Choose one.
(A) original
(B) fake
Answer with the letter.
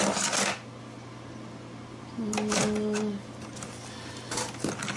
A